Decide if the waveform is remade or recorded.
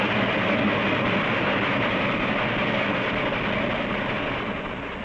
recorded